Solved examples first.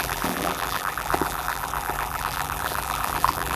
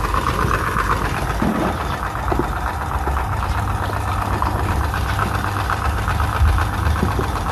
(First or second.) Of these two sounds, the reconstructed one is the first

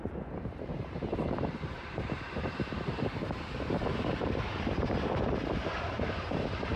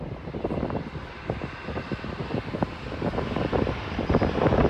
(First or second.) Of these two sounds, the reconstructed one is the first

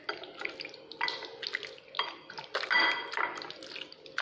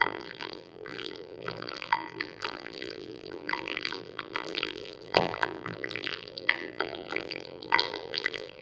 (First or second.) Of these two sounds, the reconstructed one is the second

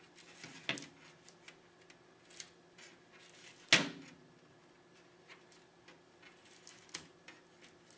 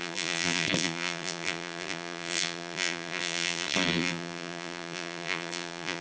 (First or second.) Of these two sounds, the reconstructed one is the second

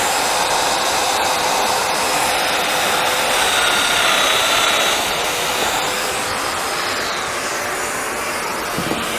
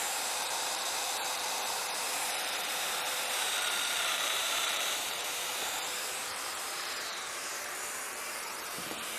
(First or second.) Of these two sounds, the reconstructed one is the second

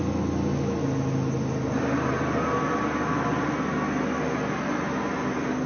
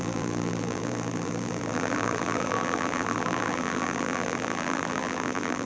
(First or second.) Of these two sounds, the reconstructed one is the second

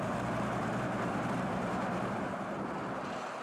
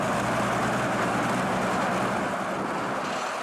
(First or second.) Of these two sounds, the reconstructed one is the first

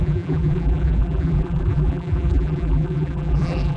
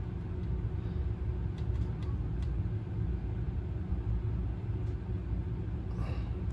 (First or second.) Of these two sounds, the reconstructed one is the first